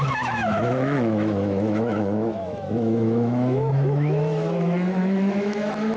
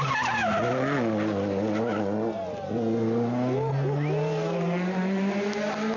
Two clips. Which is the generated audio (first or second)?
first